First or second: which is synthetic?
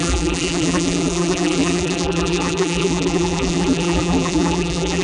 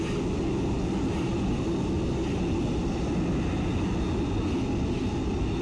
first